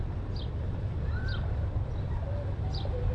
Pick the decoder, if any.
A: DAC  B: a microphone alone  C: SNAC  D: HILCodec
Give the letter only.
B